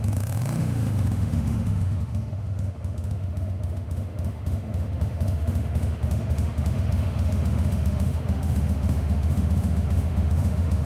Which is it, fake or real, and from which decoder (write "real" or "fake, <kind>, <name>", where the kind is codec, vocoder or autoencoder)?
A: fake, autoencoder, DAC-VAE